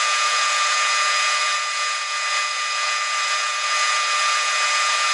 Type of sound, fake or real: fake